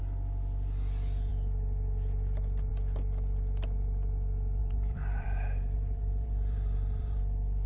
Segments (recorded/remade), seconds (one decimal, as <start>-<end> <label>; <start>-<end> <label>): 0.0-4.6 recorded; 4.6-7.2 remade; 7.2-7.7 recorded